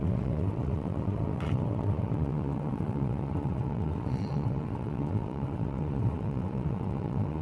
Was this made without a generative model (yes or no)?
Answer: no